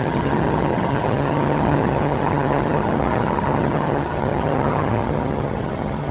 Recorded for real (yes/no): no